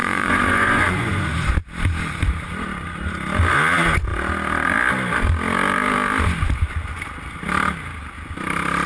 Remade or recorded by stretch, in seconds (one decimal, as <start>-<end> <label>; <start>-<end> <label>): 0.0-1.5 remade; 1.5-8.9 recorded